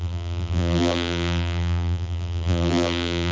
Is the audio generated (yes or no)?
yes